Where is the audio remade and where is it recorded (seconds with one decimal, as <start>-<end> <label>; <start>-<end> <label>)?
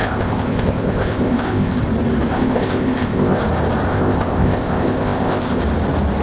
0.0-1.8 remade; 1.8-2.3 recorded; 2.3-3.4 remade; 3.4-3.9 recorded; 3.9-5.6 remade; 5.6-6.2 recorded